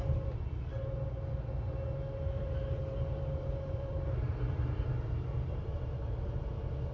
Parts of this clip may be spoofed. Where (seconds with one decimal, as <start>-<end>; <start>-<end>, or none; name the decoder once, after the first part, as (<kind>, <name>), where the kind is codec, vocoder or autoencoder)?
2.4-6.5 (vocoder, BigVGAN v2)